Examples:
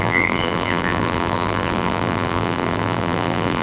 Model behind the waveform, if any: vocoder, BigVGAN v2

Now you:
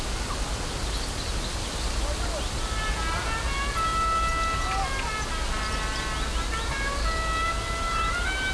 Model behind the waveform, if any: none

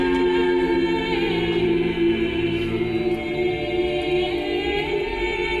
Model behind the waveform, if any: none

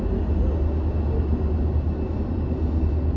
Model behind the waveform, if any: none